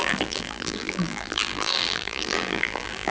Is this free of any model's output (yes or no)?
no